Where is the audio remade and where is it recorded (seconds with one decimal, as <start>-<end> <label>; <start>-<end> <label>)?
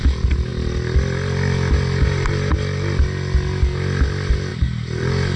0.0-4.5 recorded; 4.5-5.4 remade